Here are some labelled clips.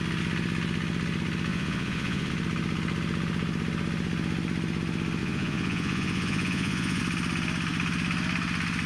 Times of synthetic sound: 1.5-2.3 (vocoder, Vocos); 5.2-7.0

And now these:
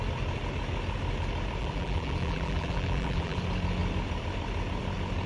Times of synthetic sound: 1.6-3.4 (vocoder, BigVGAN v2)

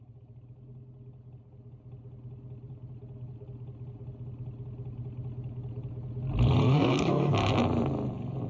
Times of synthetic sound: 6.6-7.3 (codec, SNAC)